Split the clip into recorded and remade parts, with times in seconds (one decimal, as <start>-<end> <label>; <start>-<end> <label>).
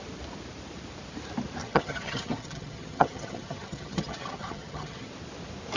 0.0-1.6 recorded; 1.6-5.1 remade; 5.1-5.8 recorded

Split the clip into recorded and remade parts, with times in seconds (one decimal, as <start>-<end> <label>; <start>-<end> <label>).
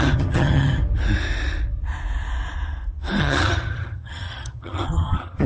0.0-0.8 remade; 0.8-3.2 recorded; 3.2-5.5 remade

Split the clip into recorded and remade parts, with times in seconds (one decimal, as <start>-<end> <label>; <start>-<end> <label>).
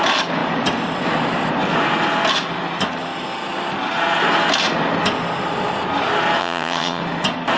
0.0-6.4 recorded; 6.4-7.0 remade; 7.0-7.6 recorded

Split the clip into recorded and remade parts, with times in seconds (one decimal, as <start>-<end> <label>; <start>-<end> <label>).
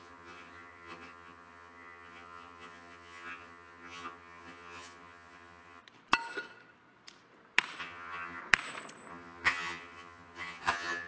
0.0-5.8 remade; 5.8-7.8 recorded; 7.8-8.4 remade; 8.4-9.1 recorded; 9.1-11.1 remade